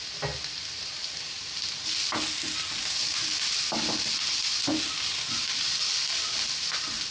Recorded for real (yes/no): yes